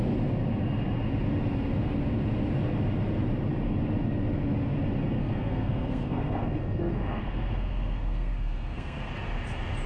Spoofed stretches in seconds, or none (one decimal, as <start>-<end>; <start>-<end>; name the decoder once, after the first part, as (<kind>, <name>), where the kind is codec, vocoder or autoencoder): 5.2-9.1 (codec, SNAC)